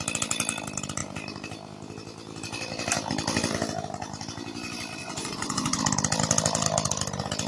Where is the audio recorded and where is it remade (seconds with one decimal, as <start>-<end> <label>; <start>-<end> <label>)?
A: 0.0-5.0 recorded; 5.0-5.8 remade; 5.8-7.5 recorded